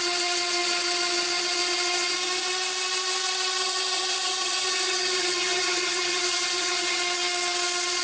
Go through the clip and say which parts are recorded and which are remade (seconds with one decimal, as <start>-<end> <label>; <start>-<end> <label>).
0.0-3.6 recorded; 3.6-7.0 remade; 7.0-8.0 recorded